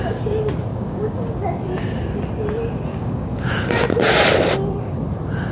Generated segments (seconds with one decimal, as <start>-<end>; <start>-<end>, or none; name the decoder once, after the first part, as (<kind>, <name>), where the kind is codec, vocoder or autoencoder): 0.7-1.3 (codec, DAC); 2.9-3.5